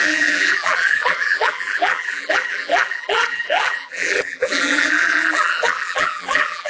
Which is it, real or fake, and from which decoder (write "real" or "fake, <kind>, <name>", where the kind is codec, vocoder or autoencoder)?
fake, vocoder, BigVGAN v2